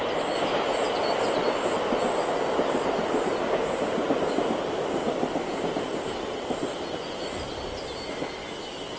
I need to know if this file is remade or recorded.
recorded